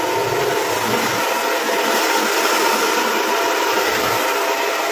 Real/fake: real